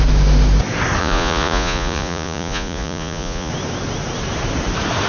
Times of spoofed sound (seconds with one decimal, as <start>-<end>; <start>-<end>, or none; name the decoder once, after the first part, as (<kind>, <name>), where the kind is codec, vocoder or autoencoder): 1.0-3.5 (vocoder, Vocos)